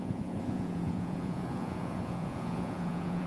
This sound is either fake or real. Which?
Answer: fake